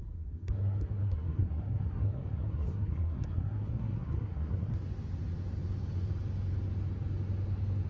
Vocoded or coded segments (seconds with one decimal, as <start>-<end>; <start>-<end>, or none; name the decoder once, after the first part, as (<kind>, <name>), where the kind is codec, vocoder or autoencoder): 0.0-4.7 (codec, SNAC)